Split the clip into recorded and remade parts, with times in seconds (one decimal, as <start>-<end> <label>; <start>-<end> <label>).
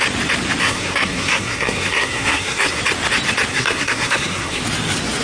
0.0-0.6 recorded; 0.6-2.8 remade; 2.8-3.5 recorded; 3.5-4.6 remade; 4.6-5.2 recorded